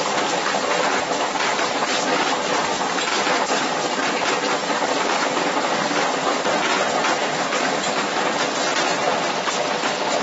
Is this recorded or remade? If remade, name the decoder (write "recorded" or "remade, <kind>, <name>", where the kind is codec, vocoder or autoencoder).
recorded